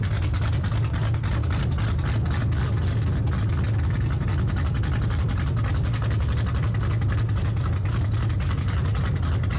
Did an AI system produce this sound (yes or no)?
no